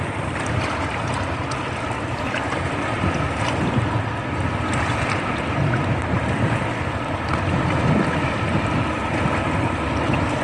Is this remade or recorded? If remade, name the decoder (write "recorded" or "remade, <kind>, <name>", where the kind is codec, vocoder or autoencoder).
remade, vocoder, BigVGAN v2